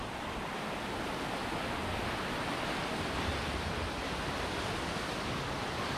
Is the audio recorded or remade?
recorded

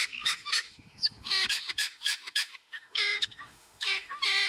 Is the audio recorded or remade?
remade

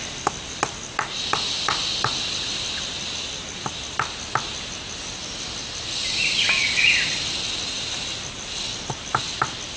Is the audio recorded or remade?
recorded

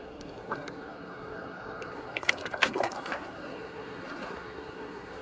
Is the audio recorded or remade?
remade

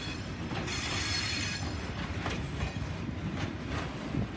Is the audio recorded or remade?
recorded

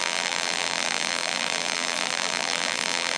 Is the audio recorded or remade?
remade